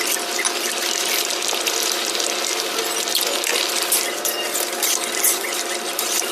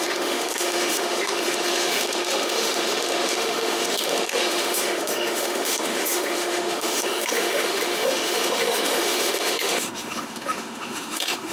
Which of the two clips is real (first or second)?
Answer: first